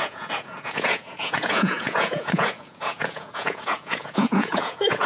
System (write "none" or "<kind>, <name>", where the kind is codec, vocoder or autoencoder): vocoder, Vocos